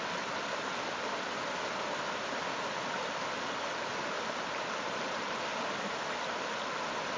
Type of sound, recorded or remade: recorded